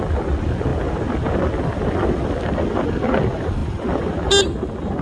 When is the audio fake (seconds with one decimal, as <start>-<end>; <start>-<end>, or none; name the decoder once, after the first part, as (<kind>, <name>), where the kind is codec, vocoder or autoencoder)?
none